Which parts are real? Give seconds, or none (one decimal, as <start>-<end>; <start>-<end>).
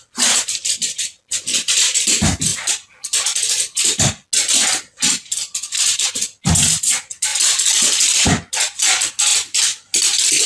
0.0-10.5